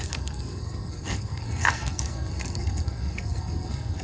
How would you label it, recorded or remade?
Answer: remade